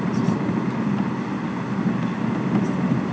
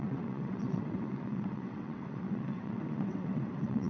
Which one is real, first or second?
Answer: first